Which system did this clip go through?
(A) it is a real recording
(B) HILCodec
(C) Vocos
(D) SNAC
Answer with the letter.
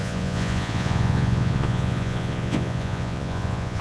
C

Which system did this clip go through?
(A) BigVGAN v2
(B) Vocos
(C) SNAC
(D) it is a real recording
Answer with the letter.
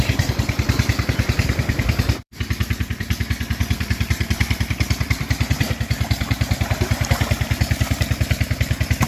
A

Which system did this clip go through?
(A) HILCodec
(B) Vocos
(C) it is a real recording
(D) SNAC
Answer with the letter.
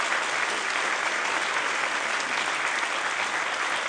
C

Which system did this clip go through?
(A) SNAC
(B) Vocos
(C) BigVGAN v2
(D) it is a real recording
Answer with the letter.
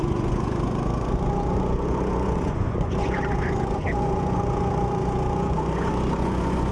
B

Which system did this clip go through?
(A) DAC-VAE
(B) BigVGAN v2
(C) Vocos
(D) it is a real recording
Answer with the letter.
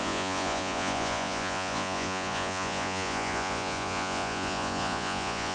C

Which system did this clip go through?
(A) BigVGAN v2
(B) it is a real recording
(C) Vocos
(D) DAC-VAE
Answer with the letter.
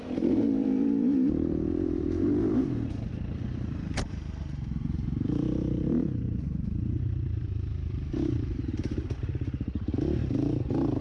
A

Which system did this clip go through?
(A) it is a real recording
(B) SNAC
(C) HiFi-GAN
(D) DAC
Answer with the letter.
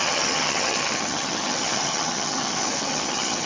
C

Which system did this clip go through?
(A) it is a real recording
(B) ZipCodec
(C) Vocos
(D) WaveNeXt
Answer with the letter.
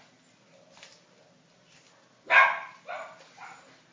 A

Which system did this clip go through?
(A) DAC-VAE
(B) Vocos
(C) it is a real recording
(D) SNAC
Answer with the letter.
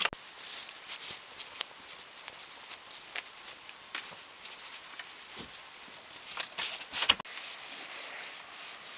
C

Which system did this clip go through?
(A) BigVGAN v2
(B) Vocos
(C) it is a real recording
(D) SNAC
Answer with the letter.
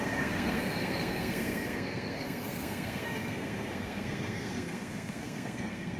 D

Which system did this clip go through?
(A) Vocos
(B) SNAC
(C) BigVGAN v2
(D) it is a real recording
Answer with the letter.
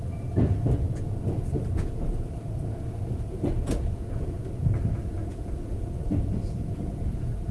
A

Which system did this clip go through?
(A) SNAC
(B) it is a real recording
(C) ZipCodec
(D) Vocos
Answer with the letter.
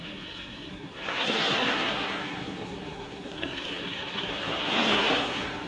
A